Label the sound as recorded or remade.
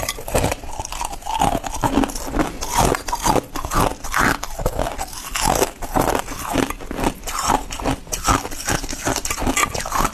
recorded